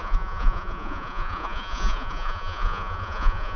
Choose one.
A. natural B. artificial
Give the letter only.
B